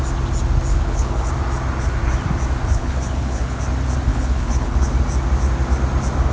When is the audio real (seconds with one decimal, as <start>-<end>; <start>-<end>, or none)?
0.0-0.7; 1.3-2.7; 3.6-4.1; 4.9-6.3